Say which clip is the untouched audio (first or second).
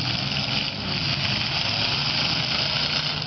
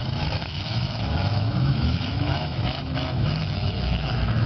first